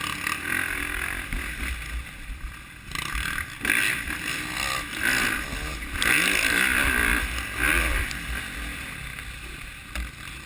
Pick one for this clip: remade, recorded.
recorded